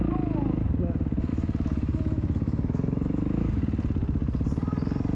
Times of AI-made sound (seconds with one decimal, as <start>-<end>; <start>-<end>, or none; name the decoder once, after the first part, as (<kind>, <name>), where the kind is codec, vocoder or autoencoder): 1.3-3.6 (autoencoder, DAC-VAE)